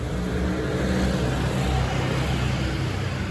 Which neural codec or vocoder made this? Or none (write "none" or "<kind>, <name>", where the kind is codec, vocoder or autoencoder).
none